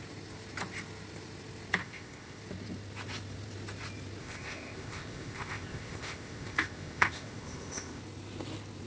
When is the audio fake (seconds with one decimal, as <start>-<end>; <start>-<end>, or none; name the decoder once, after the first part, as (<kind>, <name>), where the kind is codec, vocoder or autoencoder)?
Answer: 1.8-2.4 (codec, ZipCodec); 4.2-8.0